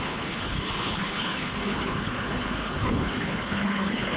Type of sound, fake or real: fake